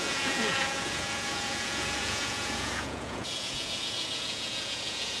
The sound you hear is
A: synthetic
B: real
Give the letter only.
A